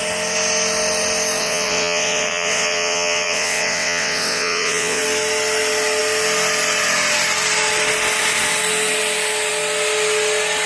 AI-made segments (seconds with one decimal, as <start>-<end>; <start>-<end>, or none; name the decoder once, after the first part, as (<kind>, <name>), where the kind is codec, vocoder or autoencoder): 1.4-5.0 (vocoder, WaveNeXt)